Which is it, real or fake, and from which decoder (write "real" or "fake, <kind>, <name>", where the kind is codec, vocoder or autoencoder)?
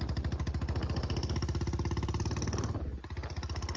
real